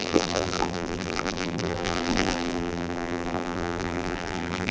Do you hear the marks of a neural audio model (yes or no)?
yes